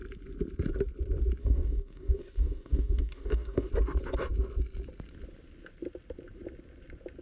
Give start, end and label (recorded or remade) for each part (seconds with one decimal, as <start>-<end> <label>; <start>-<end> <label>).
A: 0.0-1.4 recorded; 1.4-3.7 remade; 3.7-7.2 recorded

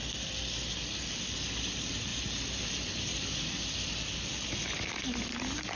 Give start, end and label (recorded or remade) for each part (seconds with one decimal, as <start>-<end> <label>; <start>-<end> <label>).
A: 0.0-2.1 recorded; 2.1-3.9 remade; 3.9-5.8 recorded

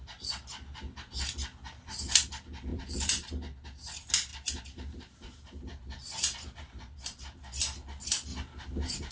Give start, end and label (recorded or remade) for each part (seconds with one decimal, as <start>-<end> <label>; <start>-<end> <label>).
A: 0.0-2.7 recorded; 2.7-3.3 remade; 3.3-4.3 recorded; 4.3-7.4 remade; 7.4-8.3 recorded; 8.3-9.1 remade

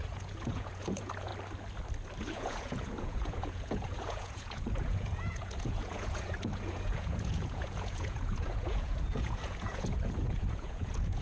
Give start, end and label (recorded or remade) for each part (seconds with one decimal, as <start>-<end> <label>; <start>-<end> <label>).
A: 0.0-1.3 remade; 1.3-2.2 recorded; 2.2-11.2 remade